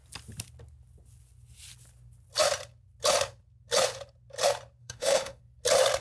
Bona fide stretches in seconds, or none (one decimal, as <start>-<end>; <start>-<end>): 0.0-4.8; 5.4-6.0